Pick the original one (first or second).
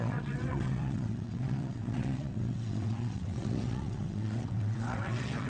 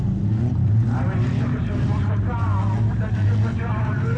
second